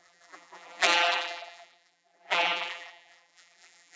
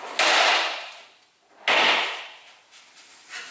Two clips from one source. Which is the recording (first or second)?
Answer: second